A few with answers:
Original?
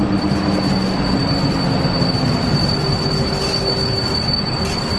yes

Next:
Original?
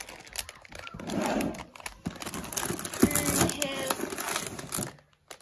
yes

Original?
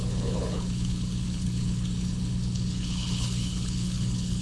no